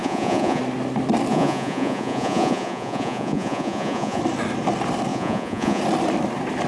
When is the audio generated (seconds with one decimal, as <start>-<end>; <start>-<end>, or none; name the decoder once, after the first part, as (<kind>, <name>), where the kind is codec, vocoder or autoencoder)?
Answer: 0.0-0.6 (vocoder, Vocos); 1.3-4.2; 5.1-5.8